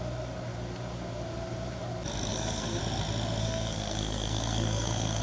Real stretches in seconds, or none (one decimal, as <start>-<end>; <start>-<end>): 0.0-2.3; 2.8-3.4